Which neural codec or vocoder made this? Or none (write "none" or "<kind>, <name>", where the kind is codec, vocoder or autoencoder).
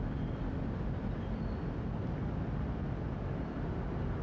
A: none